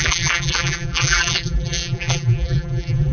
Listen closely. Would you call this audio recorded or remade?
remade